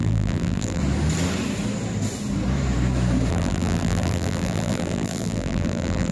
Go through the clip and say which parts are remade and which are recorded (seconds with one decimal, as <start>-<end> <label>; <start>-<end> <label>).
0.0-0.8 remade; 0.8-3.3 recorded; 3.3-6.1 remade